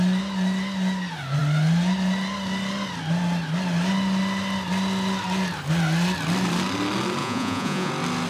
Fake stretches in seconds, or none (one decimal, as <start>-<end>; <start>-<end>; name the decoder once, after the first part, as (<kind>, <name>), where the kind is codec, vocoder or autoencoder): 7.2-7.9 (vocoder, Vocos)